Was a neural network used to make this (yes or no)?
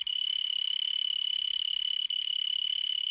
yes